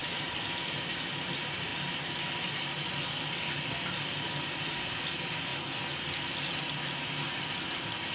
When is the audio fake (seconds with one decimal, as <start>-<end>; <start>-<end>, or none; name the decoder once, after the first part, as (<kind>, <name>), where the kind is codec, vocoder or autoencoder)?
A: none